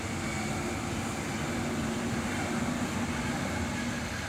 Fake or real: real